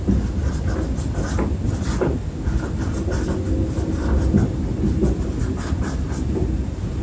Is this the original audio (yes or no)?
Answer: yes